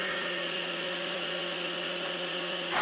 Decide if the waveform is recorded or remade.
remade